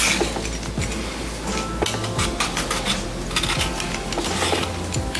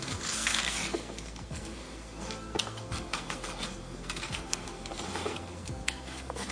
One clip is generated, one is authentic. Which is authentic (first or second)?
first